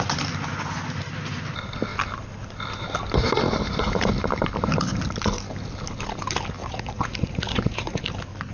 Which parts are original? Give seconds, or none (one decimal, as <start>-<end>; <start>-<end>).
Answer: 0.0-6.6; 8.0-8.5